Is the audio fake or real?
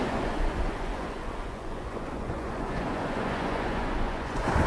fake